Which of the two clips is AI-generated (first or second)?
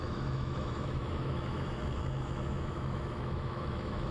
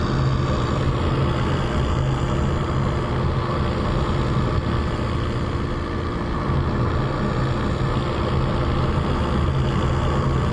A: first